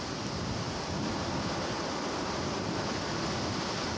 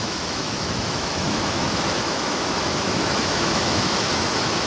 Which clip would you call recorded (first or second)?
first